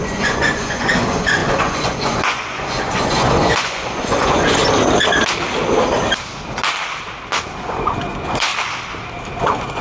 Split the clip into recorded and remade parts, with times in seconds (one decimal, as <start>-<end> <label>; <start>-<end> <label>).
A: 0.0-4.6 remade; 4.6-7.4 recorded; 7.4-8.5 remade; 8.5-9.4 recorded; 9.4-9.8 remade